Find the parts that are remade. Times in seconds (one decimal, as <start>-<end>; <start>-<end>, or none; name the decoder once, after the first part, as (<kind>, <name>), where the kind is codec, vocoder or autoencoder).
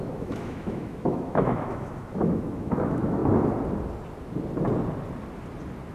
0.0-3.2 (autoencoder, DAC-VAE)